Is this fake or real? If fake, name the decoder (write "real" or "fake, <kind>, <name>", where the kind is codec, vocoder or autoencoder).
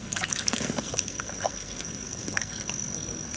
fake, codec, SNAC